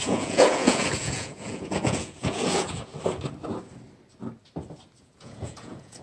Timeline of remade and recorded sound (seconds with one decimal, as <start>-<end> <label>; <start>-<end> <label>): 0.0-2.9 remade; 2.9-5.0 recorded; 5.0-6.0 remade